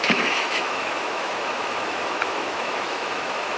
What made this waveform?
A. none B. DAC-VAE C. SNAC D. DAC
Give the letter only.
B